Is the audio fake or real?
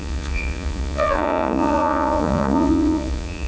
fake